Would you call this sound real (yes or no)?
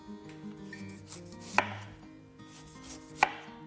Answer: yes